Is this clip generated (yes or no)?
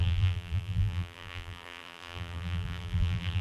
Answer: yes